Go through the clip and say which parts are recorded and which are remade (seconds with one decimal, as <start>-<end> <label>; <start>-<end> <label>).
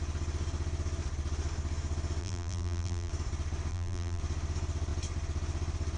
0.0-2.2 recorded; 2.2-3.1 remade; 3.1-3.7 recorded; 3.7-4.2 remade; 4.2-6.0 recorded